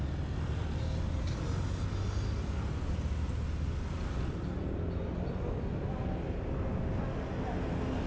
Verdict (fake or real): real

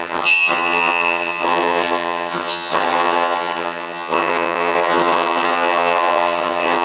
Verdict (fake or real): fake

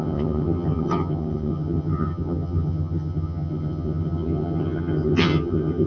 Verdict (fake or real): fake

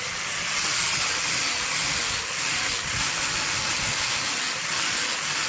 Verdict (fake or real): real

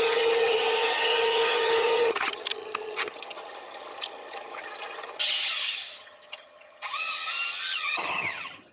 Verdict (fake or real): fake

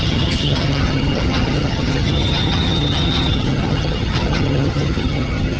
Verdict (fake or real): fake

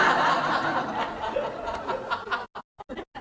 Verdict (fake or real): real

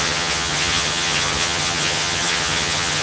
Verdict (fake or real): fake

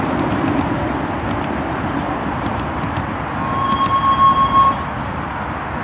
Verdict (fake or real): real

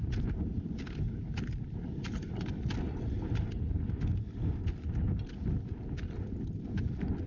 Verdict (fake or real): real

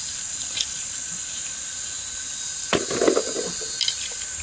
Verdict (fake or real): real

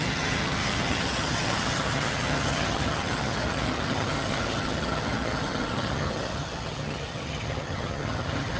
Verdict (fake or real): fake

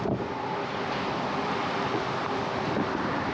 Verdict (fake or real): real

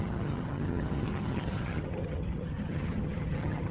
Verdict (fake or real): fake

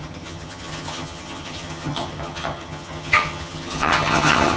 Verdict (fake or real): fake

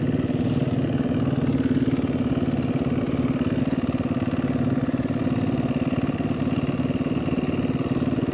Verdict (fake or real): real